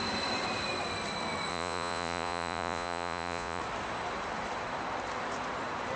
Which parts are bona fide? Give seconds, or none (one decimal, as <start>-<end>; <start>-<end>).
0.0-1.5; 3.6-6.0